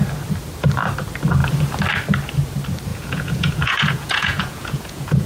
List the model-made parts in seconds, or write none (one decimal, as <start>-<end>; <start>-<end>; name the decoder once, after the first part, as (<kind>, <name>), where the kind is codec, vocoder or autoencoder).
2.9-5.3 (vocoder, Vocos)